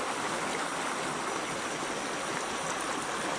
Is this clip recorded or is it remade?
recorded